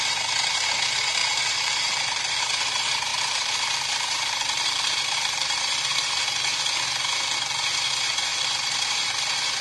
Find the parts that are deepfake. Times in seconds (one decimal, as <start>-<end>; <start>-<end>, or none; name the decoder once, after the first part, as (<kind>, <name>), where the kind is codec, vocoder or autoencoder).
1.2-2.4 (vocoder, BigVGAN v2); 3.1-6.2; 8.3-9.1

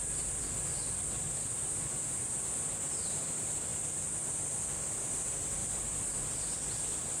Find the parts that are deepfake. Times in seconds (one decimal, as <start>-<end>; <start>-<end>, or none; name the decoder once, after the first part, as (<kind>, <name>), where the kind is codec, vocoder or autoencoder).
0.0-0.7 (vocoder, BigVGAN v2); 1.8-3.7; 4.8-7.2

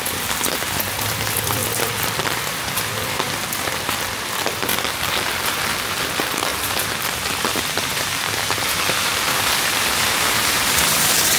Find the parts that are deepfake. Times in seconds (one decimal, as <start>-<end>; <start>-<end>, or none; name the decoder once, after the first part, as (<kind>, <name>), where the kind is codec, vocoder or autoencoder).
0.0-1.6 (vocoder, BigVGAN v2); 3.9-11.4

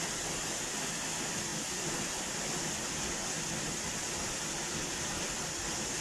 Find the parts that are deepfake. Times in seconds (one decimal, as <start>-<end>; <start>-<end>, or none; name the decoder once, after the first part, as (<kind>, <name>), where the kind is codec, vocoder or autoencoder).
1.5-5.1 (vocoder, BigVGAN v2)

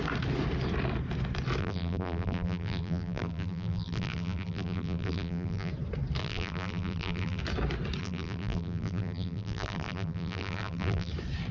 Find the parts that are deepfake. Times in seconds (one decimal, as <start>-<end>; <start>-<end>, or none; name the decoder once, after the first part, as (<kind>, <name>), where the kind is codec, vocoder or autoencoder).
1.6-5.7 (vocoder, BigVGAN v2); 6.2-7.4; 8.0-11.1

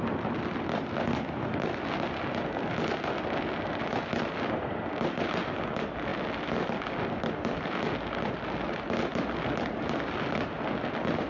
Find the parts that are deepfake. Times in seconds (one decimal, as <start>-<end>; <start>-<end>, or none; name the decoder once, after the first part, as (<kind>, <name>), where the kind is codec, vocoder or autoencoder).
none